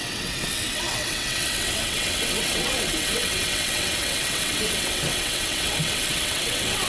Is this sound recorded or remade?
remade